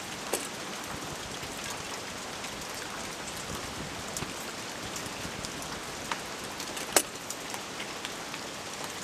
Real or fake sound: real